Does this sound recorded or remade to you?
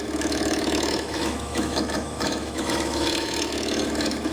remade